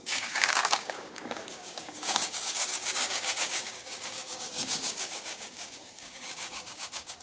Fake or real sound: fake